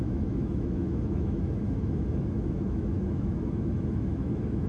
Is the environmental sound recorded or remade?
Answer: remade